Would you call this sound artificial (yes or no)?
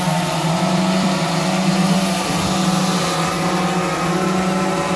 no